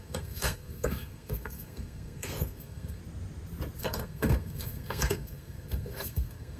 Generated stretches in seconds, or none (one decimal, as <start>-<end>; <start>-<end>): 0.0-3.0; 3.8-6.6